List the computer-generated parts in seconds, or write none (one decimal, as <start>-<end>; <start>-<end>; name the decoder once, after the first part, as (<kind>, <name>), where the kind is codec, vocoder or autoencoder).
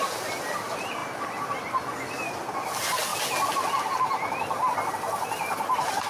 none